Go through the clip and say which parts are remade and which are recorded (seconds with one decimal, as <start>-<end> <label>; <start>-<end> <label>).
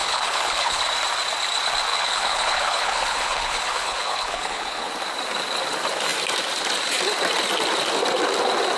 0.0-0.8 remade; 0.8-1.9 recorded; 1.9-4.9 remade; 4.9-8.8 recorded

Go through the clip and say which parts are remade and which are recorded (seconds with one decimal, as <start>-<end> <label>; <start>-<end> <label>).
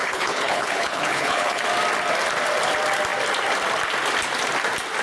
0.0-1.6 remade; 1.6-5.0 recorded